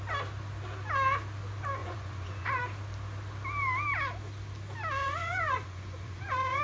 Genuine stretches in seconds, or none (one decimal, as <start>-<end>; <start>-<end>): 0.0-1.8; 2.6-5.0